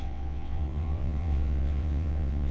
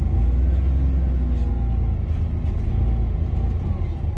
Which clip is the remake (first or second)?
first